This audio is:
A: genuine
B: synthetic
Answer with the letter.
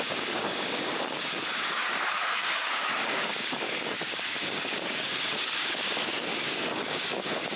B